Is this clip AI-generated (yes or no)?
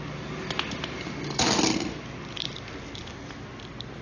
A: no